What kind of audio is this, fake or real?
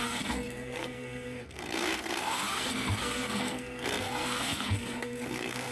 fake